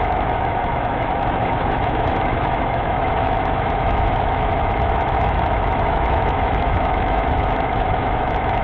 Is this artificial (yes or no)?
yes